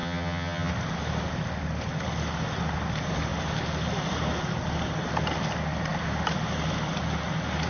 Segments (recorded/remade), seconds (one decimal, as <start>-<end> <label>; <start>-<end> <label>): 0.0-0.7 remade; 0.7-7.7 recorded